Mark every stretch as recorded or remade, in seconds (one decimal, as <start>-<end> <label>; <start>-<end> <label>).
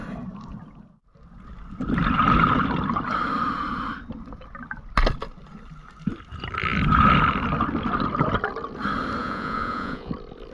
0.0-9.2 recorded; 9.2-10.1 remade; 10.1-10.5 recorded